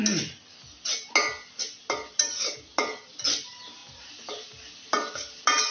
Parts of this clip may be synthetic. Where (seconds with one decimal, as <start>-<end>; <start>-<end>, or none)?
none